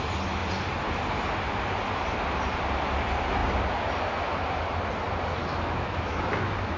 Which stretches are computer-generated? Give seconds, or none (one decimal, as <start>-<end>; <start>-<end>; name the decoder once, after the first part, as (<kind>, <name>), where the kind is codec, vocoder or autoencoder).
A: 5.4-6.8 (autoencoder, DAC-VAE)